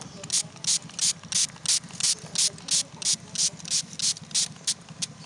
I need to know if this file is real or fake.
real